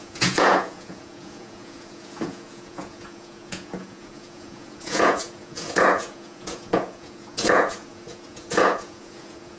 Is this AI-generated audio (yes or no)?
yes